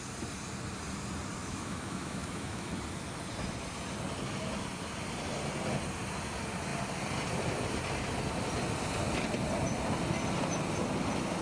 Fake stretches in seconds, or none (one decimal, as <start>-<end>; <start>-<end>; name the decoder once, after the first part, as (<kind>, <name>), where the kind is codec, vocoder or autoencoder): 1.4-2.7 (autoencoder, DAC-VAE)